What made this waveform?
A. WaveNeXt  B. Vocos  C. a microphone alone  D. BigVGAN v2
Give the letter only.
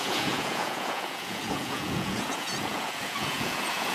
B